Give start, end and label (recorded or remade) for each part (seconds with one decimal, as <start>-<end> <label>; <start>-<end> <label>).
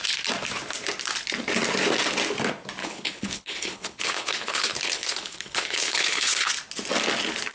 0.0-2.8 recorded; 2.8-6.5 remade; 6.5-7.5 recorded